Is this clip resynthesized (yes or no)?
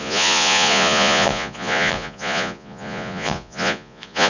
yes